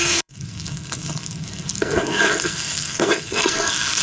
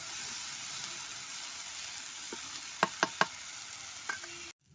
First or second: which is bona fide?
second